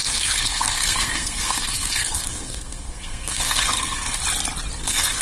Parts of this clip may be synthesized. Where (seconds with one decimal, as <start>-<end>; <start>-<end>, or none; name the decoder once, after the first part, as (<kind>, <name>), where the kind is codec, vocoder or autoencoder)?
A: 0.0-4.2 (codec, SNAC); 4.8-5.2